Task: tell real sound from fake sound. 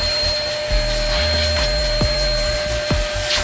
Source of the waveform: real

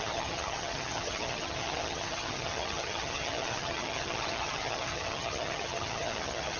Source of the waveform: fake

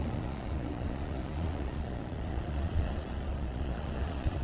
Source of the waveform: fake